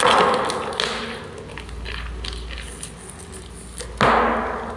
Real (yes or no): yes